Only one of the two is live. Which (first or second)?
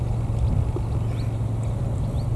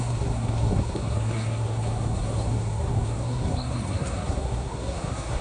first